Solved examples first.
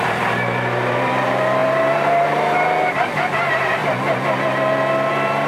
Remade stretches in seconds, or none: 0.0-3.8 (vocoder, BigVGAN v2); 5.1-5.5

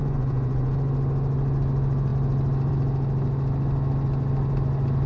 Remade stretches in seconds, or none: 0.0-0.7 (vocoder, Vocos)

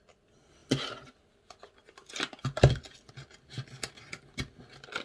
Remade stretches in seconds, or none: none

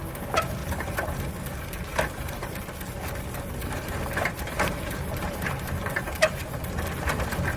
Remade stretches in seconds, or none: 0.6-1.2 (vocoder, BigVGAN v2); 1.9-2.6; 3.6-5.7

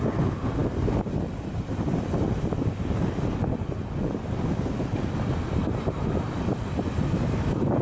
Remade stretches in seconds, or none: none